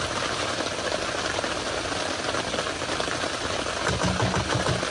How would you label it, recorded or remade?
recorded